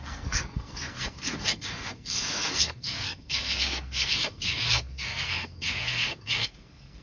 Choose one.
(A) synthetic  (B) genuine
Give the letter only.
A